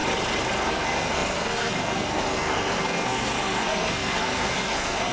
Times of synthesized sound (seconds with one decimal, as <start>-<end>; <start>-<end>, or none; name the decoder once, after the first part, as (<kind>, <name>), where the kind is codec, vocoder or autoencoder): 0.7-5.1 (codec, SNAC)